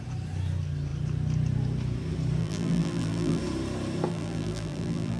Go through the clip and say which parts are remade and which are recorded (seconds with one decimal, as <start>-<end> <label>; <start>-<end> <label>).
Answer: 0.0-2.4 recorded; 2.4-3.4 remade; 3.4-4.1 recorded; 4.1-5.2 remade